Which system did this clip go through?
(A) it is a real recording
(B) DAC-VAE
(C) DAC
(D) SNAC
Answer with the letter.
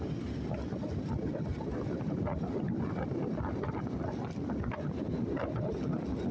A